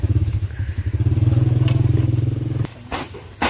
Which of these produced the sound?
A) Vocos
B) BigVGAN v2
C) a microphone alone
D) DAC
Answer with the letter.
B